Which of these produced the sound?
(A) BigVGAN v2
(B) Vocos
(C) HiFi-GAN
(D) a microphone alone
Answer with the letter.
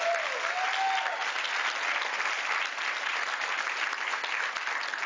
D